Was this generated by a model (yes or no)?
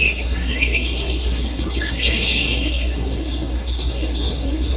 yes